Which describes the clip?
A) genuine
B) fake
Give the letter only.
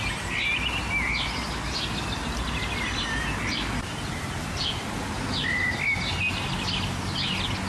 A